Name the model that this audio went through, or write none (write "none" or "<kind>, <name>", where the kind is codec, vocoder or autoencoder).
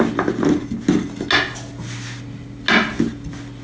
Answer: none